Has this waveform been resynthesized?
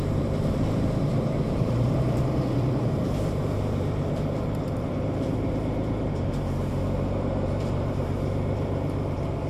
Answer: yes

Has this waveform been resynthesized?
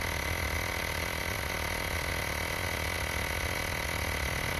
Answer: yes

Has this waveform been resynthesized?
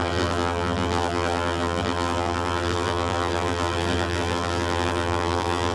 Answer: yes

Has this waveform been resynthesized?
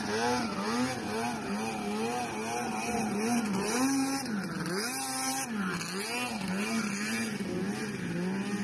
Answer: no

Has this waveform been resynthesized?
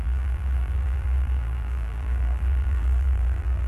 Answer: yes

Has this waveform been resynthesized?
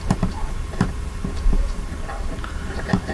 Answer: yes